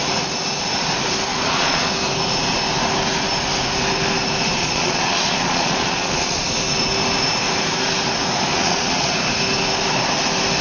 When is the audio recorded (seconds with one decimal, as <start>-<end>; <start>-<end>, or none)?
0.0-1.3; 1.9-4.6; 6.4-8.5; 9.1-10.6